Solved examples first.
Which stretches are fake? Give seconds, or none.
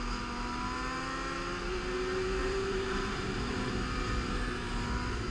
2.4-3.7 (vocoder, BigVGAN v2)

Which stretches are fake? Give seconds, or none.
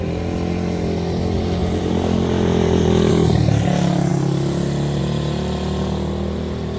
none